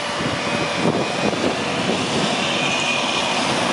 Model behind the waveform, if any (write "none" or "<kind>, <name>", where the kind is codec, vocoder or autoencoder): none